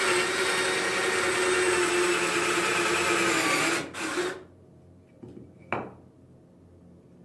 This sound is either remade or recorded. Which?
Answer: recorded